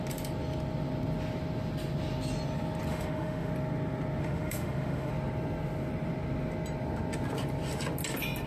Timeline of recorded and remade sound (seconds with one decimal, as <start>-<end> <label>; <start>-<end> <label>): 0.0-2.9 recorded; 2.9-3.5 remade; 3.5-4.2 recorded; 4.2-5.1 remade; 5.1-8.5 recorded